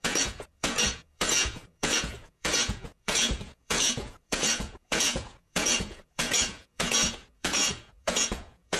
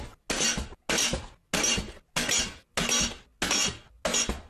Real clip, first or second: second